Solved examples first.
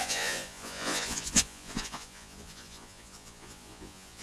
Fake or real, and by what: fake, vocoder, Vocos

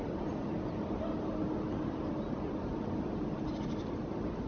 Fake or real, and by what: real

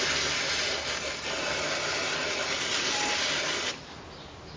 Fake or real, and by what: real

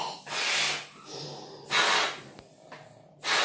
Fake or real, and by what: real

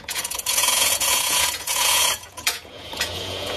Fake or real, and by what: fake, vocoder, Vocos